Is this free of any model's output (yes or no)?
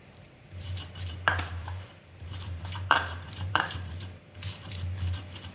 no